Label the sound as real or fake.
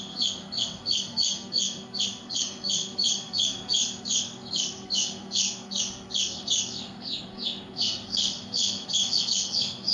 fake